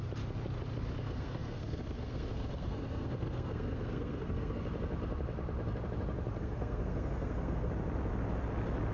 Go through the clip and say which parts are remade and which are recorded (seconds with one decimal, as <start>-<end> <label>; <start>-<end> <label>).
0.0-1.0 recorded; 1.0-4.6 remade; 4.6-6.4 recorded; 6.4-7.7 remade; 7.7-8.9 recorded